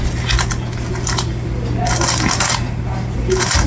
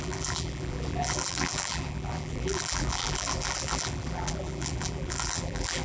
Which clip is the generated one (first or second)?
second